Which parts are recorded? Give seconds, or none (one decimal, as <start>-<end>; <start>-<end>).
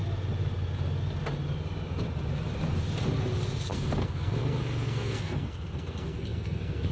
0.0-3.6